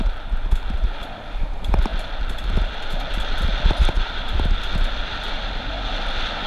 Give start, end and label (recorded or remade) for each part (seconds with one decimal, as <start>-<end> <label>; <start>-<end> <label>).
0.0-6.5 recorded